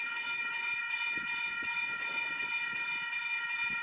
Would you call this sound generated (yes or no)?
yes